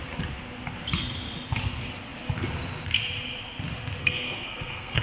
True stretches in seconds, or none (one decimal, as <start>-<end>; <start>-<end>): 0.0-4.0